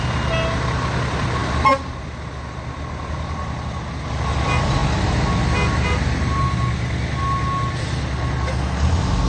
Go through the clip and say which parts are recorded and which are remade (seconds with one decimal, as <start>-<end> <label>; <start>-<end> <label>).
0.0-9.3 recorded